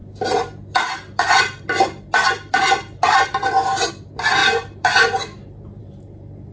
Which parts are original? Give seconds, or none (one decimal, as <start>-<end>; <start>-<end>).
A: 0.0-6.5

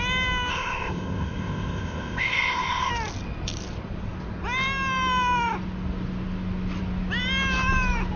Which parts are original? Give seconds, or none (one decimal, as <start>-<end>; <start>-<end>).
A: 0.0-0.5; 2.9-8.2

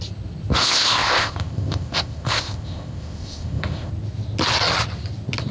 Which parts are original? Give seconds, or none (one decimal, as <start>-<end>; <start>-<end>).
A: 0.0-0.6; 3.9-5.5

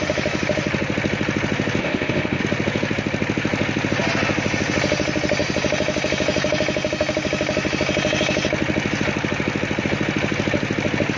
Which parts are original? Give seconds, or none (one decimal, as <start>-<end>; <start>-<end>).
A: 0.0-1.8; 2.4-11.2

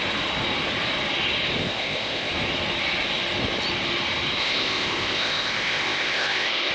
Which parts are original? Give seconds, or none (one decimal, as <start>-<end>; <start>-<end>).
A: 0.0-1.6; 2.3-4.4

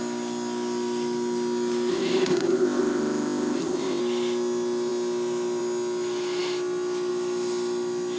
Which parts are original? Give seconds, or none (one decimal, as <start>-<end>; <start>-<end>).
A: 0.0-1.9; 4.0-8.2

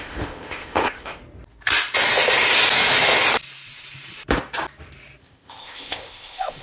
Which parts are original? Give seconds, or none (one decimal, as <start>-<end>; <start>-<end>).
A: 1.2-5.2